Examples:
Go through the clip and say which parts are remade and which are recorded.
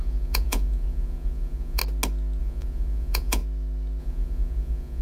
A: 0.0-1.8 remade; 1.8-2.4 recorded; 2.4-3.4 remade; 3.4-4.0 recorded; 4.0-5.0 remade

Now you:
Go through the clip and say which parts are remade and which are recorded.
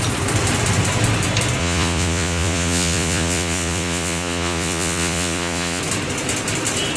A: 0.0-1.6 recorded; 1.6-5.8 remade; 5.8-7.0 recorded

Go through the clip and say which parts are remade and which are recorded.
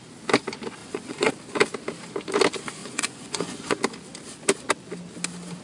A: 0.0-0.8 recorded; 0.8-1.3 remade; 1.3-2.8 recorded; 2.8-3.8 remade; 3.8-5.6 recorded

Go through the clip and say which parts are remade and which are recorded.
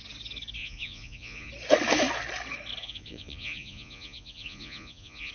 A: 0.0-0.6 recorded; 0.6-1.5 remade; 1.5-2.8 recorded; 2.8-5.3 remade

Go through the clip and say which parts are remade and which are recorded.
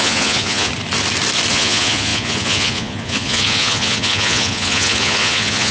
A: 0.0-0.7 remade; 0.7-1.5 recorded; 1.5-5.7 remade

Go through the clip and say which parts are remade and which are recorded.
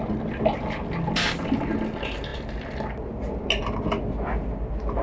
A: 0.0-5.0 recorded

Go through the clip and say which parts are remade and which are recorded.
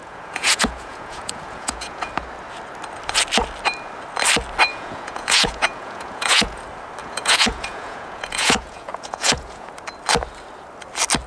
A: 0.0-2.1 remade; 2.1-4.7 recorded; 4.7-6.6 remade; 6.6-7.0 recorded; 7.0-9.7 remade; 9.7-11.3 recorded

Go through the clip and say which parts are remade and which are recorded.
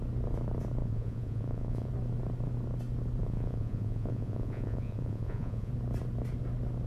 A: 0.0-0.8 recorded; 0.8-1.9 remade; 1.9-3.2 recorded; 3.2-5.7 remade; 5.7-6.9 recorded